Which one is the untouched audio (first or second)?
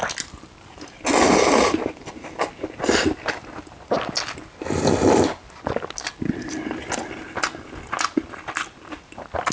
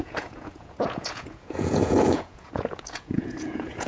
first